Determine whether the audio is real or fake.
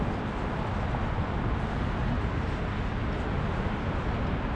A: real